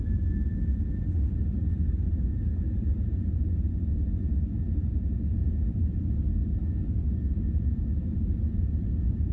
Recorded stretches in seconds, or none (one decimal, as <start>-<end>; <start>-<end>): 0.0-1.7; 3.9-5.4; 6.3-7.2